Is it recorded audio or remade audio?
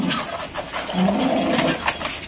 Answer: recorded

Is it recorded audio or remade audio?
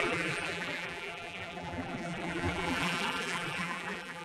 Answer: remade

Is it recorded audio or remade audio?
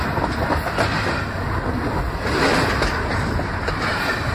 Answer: recorded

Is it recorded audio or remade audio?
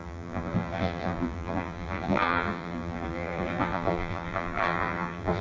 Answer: remade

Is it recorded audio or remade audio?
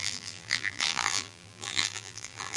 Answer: remade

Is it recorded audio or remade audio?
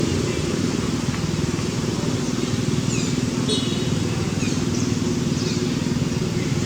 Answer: remade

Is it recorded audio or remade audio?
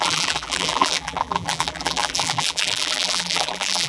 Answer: remade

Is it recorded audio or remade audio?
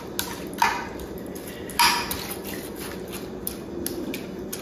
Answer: recorded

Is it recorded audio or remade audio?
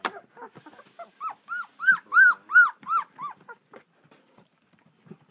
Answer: remade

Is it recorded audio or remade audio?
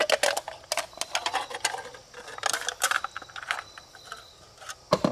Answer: recorded